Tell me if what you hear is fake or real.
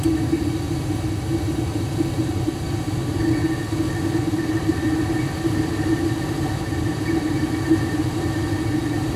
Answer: real